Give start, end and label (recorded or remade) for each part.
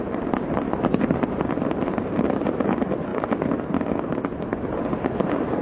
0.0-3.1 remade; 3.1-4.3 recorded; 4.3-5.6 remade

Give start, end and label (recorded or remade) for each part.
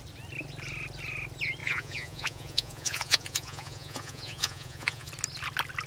0.0-1.6 recorded; 1.6-5.1 remade; 5.1-5.9 recorded